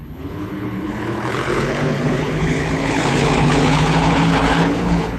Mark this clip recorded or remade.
remade